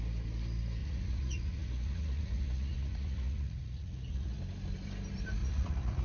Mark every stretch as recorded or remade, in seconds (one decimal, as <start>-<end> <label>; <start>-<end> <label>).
0.0-0.8 recorded; 0.8-4.4 remade; 4.4-5.4 recorded; 5.4-6.0 remade